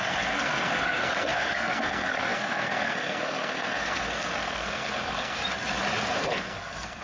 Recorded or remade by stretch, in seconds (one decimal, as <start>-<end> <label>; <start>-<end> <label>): 0.0-5.4 remade; 5.4-6.1 recorded; 6.1-7.0 remade